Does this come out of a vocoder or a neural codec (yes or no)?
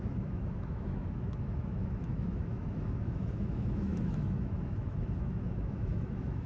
yes